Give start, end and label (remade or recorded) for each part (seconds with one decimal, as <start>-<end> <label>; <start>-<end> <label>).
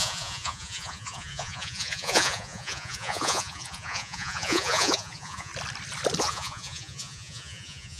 0.0-5.5 remade; 5.5-6.2 recorded; 6.2-8.0 remade